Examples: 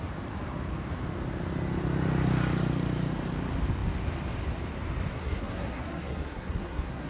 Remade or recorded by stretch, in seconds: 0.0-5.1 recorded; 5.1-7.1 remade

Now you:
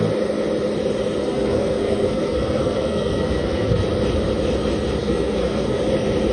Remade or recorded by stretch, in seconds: 0.0-1.2 recorded; 1.2-3.8 remade; 3.8-5.0 recorded; 5.0-5.8 remade; 5.8-6.3 recorded

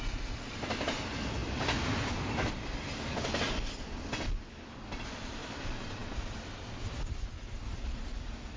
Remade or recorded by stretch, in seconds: 0.0-8.6 recorded